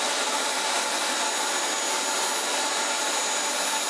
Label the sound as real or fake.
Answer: real